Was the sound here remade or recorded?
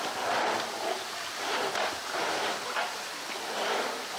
recorded